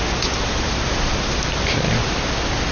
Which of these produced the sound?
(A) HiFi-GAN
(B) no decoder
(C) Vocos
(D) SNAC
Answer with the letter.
B